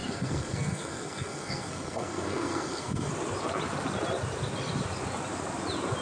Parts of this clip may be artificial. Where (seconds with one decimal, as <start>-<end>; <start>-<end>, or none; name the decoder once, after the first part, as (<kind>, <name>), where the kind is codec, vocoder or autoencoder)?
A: 0.0-3.1 (codec, SNAC)